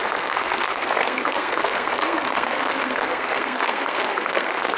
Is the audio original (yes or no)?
no